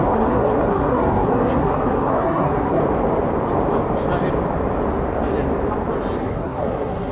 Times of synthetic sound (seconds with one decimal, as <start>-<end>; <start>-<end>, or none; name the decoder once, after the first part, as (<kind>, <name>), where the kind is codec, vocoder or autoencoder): 0.0-2.8 (codec, SNAC); 6.2-7.1